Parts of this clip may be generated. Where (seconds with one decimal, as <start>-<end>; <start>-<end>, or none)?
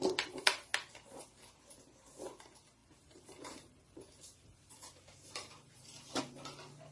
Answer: 2.8-6.2